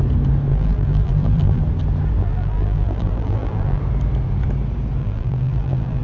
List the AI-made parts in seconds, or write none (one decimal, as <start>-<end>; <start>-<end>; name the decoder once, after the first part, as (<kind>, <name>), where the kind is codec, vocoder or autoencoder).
0.5-1.6 (vocoder, BigVGAN v2); 2.2-3.8; 5.0-6.0